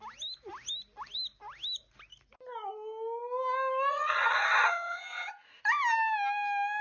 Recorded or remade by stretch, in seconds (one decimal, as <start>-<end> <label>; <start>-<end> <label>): 0.0-3.9 recorded; 3.9-5.3 remade; 5.3-6.8 recorded